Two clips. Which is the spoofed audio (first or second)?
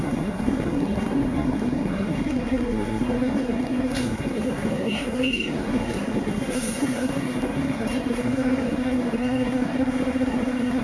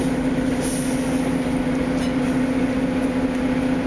first